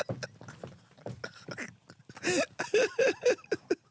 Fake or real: real